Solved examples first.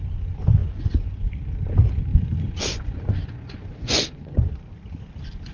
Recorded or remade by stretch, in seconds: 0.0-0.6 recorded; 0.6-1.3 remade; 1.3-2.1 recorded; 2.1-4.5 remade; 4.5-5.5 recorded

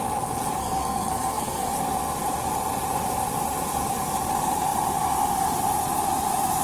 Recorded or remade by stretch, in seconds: 0.0-0.6 recorded; 0.6-1.7 remade; 1.7-6.6 recorded